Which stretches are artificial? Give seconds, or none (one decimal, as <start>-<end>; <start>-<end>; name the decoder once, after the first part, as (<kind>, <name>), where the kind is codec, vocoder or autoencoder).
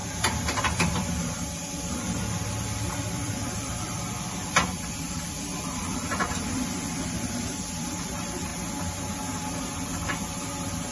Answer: 0.0-8.5 (vocoder, BigVGAN v2); 9.6-10.9